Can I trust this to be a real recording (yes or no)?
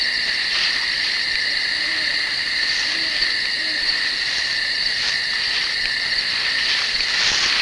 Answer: yes